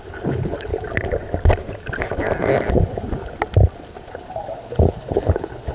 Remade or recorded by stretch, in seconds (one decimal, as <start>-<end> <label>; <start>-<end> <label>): 0.0-0.7 remade; 0.7-4.1 recorded; 4.1-5.7 remade